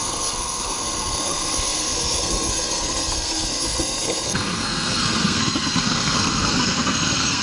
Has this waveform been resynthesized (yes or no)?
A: yes